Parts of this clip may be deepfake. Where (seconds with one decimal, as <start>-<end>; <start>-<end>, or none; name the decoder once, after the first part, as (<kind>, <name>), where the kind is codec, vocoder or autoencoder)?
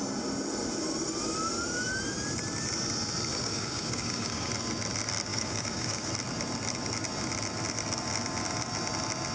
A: 3.3-4.5 (codec, DAC); 5.3-6.1